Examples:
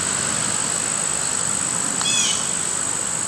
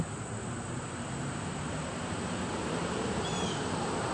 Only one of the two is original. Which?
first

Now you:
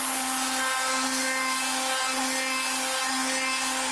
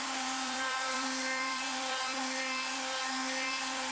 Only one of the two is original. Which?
first